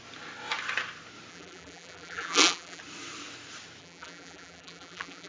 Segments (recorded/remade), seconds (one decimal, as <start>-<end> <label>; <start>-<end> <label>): 0.0-1.3 recorded; 1.3-2.8 remade; 2.8-3.8 recorded; 3.8-5.3 remade